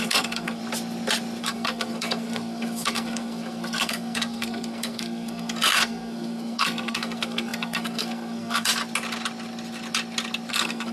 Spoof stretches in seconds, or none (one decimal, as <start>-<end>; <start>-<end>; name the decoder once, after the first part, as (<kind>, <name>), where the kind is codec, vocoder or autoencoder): 0.0-0.6 (codec, SNAC); 1.4-8.7; 10.5-10.9